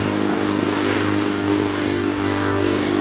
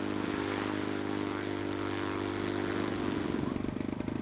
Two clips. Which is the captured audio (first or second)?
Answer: second